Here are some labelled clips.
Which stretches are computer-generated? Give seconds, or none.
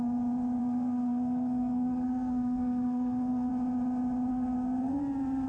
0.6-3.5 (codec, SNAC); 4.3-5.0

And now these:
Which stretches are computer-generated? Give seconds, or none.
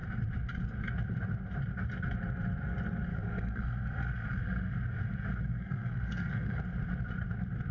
3.1-4.7 (codec, SNAC); 5.5-6.6